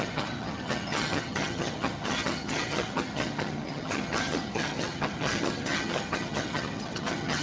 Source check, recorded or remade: remade